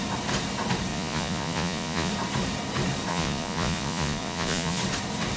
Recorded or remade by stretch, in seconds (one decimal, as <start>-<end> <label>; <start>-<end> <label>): 0.0-0.9 recorded; 0.9-2.1 remade; 2.1-3.1 recorded; 3.1-4.8 remade; 4.8-5.4 recorded